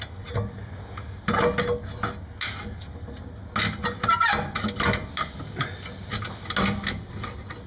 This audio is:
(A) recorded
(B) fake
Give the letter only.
A